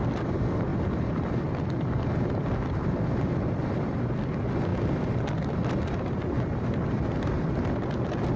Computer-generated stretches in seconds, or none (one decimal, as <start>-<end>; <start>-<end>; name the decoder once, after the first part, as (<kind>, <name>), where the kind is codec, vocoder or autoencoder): none